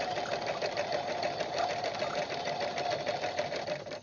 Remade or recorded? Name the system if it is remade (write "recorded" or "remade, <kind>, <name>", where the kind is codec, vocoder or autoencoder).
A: recorded